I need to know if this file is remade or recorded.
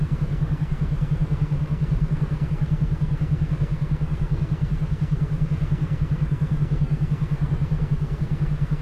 remade